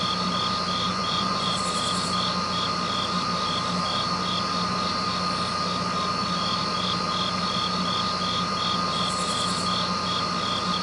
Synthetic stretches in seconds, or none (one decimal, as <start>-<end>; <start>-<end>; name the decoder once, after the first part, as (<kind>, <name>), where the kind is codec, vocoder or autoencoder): 0.9-1.6 (vocoder, Vocos)